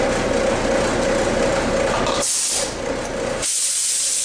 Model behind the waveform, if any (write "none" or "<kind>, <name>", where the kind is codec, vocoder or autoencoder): none